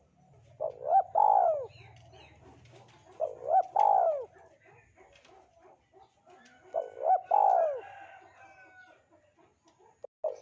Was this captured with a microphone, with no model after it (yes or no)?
yes